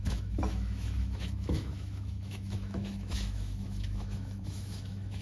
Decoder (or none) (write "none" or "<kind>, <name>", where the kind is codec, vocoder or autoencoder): autoencoder, DAC-VAE